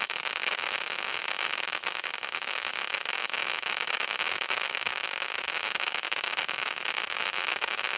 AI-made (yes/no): yes